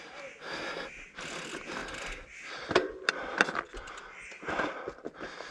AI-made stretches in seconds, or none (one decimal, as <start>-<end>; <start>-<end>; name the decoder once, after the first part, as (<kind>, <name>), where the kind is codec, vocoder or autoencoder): none